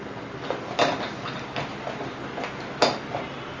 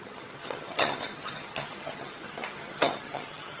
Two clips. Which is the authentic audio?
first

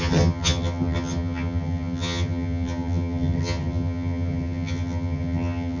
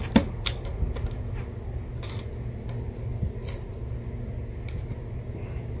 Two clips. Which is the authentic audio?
second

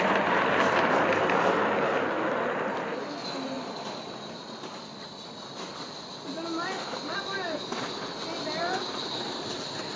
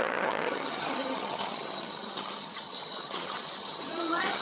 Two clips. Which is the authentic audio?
first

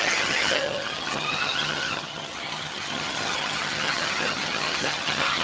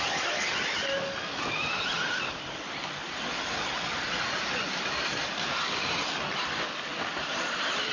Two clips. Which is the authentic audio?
second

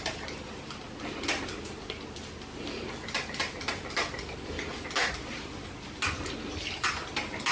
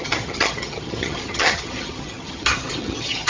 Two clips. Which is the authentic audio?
first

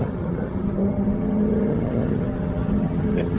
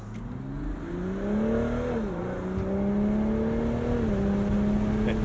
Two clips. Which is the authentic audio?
second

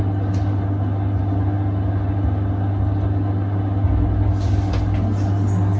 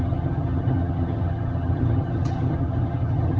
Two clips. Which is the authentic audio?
first